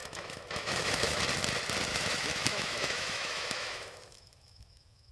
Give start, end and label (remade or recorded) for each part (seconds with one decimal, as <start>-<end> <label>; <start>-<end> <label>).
0.0-1.2 remade; 1.2-1.9 recorded; 1.9-5.1 remade